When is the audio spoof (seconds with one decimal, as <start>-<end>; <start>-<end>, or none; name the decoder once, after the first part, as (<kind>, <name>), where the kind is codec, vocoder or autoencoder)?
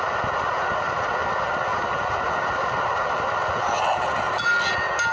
none